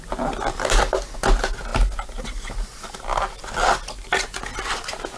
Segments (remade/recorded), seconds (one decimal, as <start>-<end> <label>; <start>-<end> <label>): 0.0-5.2 recorded